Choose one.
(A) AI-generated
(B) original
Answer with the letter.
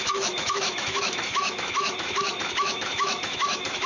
A